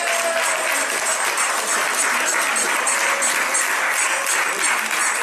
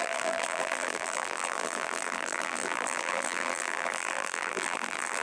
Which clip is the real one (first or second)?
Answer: first